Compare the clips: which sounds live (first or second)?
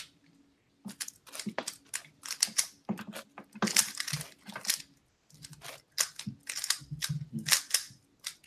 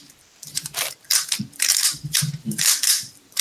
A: first